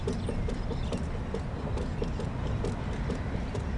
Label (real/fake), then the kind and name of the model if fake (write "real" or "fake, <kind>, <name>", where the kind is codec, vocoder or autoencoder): real